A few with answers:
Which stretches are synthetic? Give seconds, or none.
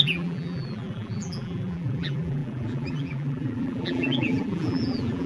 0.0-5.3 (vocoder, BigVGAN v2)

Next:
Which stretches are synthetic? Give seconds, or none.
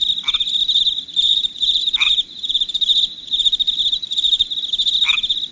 1.2-2.5 (vocoder, BigVGAN v2)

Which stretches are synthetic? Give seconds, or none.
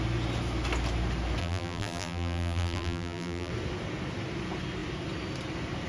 1.4-3.5 (vocoder, BigVGAN v2)